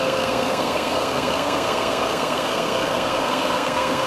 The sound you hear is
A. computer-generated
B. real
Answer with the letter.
A